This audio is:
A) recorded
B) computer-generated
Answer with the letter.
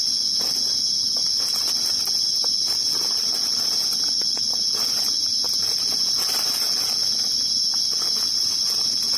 A